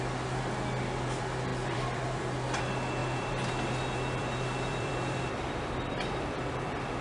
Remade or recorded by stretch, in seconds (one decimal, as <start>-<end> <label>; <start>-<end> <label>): 0.0-1.5 recorded; 1.5-2.2 remade; 2.2-3.0 recorded; 3.0-6.6 remade; 6.6-7.0 recorded